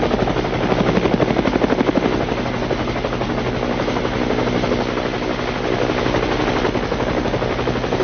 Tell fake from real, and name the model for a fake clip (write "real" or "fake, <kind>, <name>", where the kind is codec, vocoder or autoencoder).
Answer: real